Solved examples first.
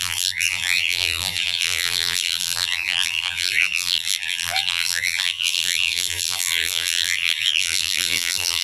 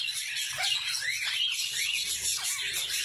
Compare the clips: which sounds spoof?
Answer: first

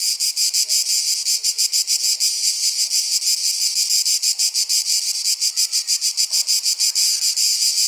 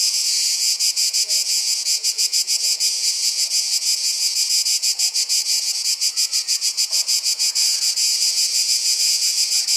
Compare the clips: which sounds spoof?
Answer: second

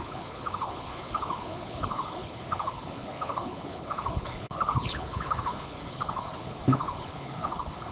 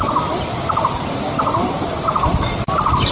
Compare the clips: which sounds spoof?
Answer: first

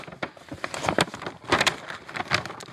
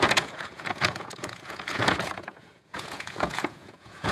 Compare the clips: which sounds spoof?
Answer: second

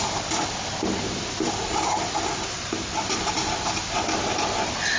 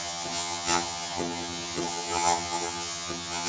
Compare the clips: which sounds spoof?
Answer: second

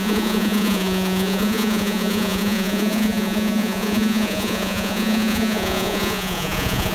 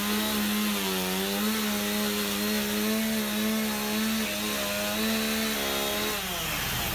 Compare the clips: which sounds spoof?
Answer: first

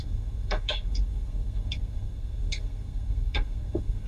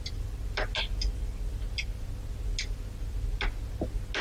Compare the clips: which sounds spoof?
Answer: first